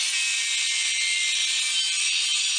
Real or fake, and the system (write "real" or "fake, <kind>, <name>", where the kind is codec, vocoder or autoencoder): real